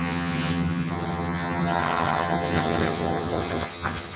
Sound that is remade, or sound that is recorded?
remade